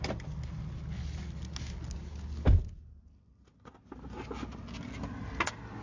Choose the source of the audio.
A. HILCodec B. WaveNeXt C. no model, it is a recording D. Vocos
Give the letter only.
C